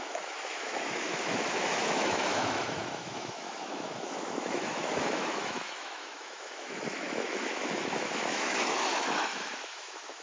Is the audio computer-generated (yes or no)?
yes